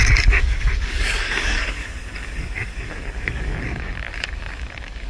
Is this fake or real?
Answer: fake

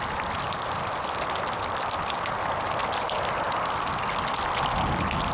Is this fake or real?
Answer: real